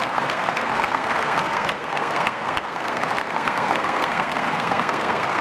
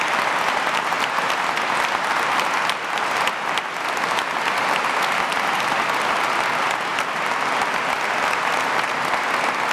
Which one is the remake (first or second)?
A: first